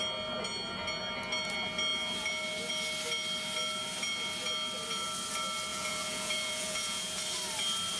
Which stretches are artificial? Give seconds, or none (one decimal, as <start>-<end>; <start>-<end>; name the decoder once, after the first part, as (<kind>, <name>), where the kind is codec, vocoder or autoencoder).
5.7-7.2 (vocoder, Vocos)